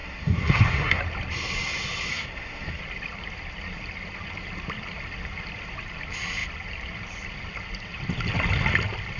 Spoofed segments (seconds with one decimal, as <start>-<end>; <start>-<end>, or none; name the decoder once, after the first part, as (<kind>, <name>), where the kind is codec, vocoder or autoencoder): 0.0-1.0 (codec, SNAC); 2.1-2.8